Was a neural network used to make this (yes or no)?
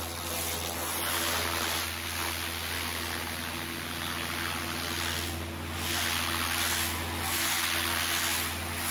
no